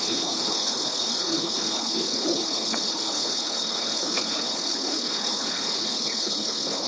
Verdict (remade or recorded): remade